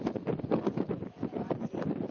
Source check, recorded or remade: recorded